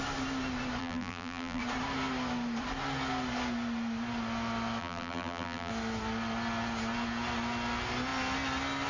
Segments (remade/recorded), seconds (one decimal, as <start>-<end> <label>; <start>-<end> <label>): 0.0-0.8 recorded; 0.8-1.6 remade; 1.6-4.8 recorded; 4.8-5.7 remade; 5.7-8.9 recorded